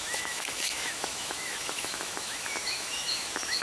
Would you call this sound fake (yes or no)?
yes